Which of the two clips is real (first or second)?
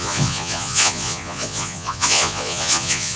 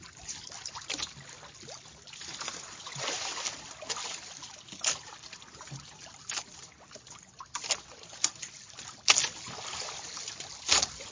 second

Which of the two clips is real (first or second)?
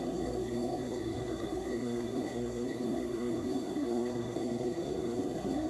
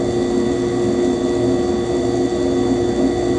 second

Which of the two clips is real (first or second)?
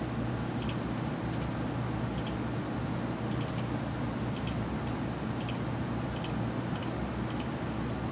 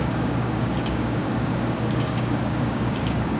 first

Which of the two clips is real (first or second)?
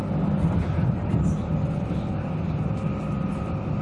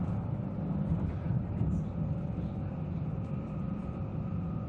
first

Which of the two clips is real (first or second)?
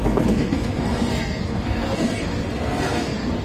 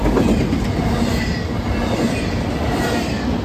second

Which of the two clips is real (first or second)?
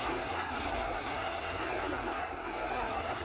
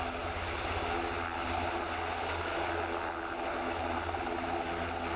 second